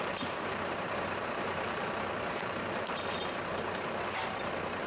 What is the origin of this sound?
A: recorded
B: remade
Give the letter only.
B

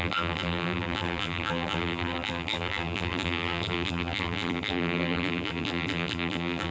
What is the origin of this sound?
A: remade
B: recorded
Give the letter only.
A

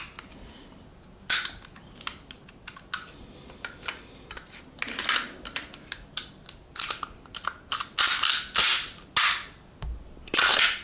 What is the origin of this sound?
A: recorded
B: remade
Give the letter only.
A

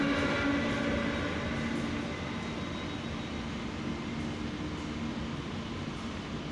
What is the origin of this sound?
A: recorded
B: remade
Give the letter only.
A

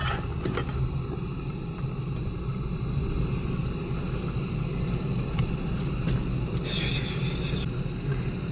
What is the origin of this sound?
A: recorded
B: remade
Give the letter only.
A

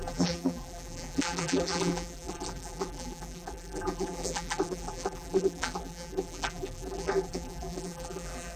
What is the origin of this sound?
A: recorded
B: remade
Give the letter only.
B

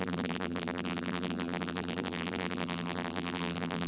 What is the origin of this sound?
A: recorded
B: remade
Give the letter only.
B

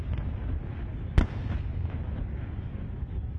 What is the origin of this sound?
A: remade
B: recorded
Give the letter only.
B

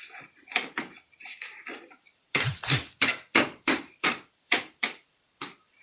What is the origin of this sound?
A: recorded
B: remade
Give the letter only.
B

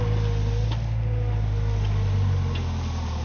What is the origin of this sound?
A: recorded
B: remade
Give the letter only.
A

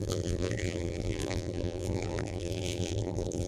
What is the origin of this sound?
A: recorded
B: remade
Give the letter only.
B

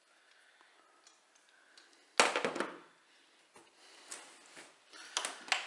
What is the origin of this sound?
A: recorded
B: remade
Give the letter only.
A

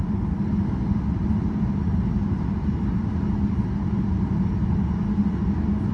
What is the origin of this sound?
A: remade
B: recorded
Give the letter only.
B